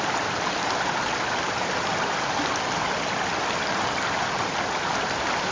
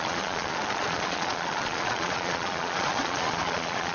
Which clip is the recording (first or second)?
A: first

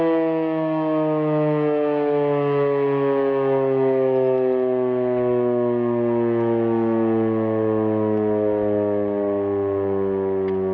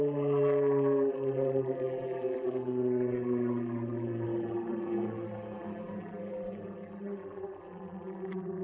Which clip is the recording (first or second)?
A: first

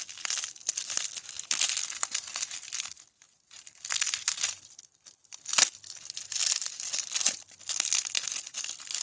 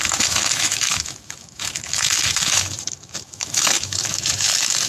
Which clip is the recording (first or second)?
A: first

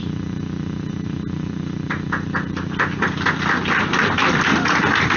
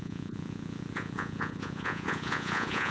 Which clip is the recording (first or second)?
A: first